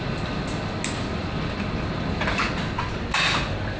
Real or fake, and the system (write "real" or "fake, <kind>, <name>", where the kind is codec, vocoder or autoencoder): real